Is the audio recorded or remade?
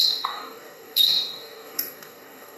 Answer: remade